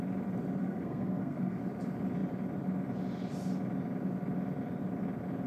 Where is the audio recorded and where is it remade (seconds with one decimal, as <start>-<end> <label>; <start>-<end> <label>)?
0.0-0.6 recorded; 0.6-1.6 remade; 1.6-5.5 recorded